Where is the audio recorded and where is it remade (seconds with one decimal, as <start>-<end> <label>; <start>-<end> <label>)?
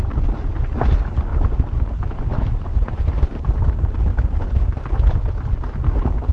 0.0-1.3 recorded; 1.3-3.5 remade; 3.5-4.1 recorded; 4.1-4.8 remade; 4.8-6.3 recorded